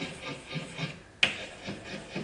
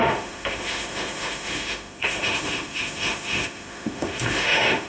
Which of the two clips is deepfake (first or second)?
second